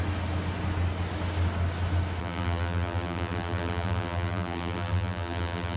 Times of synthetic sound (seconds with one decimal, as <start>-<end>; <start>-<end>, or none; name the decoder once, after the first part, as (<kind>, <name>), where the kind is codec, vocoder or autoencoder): 2.2-5.8 (vocoder, BigVGAN v2)